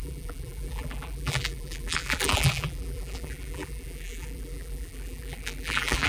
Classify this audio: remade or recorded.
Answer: remade